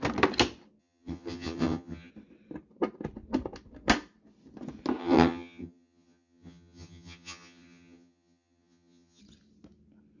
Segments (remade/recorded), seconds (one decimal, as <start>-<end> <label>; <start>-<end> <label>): 0.0-0.8 recorded; 0.8-2.1 remade; 2.1-5.0 recorded; 5.0-9.2 remade; 9.2-10.2 recorded